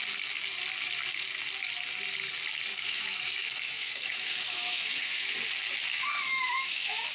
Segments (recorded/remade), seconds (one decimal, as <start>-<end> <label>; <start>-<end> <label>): 0.0-2.7 recorded; 2.7-5.3 remade; 5.3-6.3 recorded; 6.3-7.1 remade